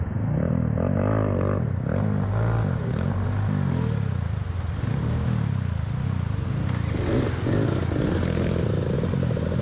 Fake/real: real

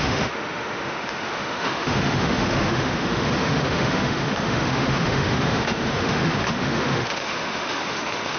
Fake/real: fake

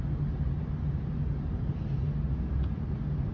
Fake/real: real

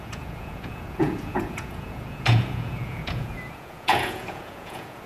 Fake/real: fake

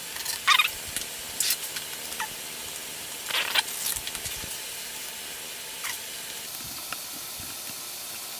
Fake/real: real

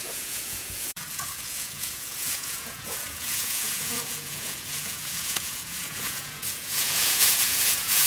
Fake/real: fake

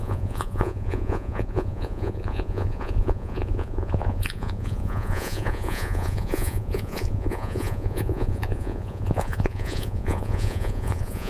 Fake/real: fake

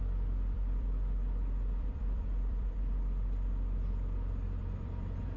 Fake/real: fake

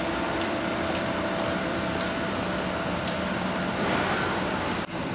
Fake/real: fake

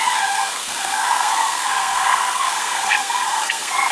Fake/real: fake